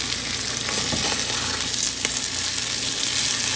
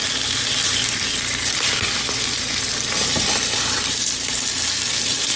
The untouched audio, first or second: first